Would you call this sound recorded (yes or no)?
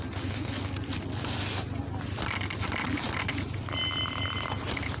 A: yes